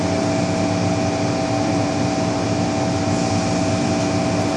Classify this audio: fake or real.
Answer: real